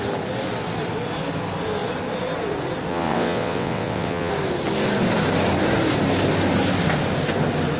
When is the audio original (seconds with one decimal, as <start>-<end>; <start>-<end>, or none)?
0.0-2.9; 4.3-7.8